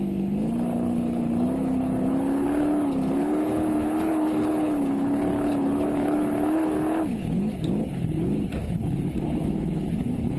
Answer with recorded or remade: remade